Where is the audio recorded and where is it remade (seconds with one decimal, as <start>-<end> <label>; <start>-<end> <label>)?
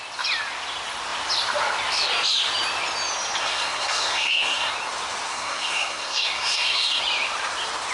0.0-3.4 recorded; 3.4-4.7 remade; 4.7-5.3 recorded; 5.3-7.0 remade; 7.0-7.9 recorded